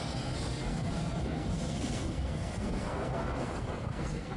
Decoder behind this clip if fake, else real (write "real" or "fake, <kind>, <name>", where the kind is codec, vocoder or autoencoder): fake, codec, SNAC